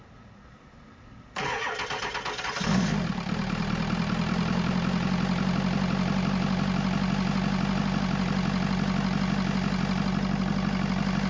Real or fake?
real